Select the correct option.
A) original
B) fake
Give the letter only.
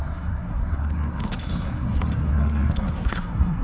B